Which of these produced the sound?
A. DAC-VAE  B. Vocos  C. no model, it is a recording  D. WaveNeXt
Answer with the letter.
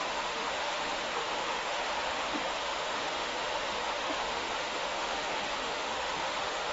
A